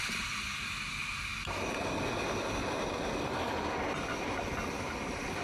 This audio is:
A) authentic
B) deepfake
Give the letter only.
A